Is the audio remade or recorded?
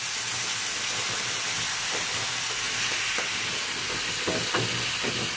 recorded